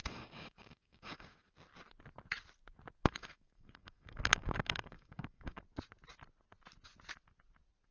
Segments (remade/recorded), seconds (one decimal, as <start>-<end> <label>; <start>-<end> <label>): 0.0-1.5 remade; 1.5-3.0 recorded; 3.0-5.6 remade; 5.6-7.9 recorded